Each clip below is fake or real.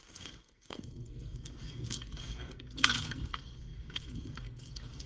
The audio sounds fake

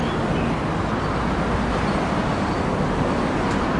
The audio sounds real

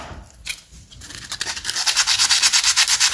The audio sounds real